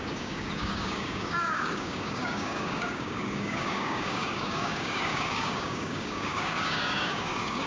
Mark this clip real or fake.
fake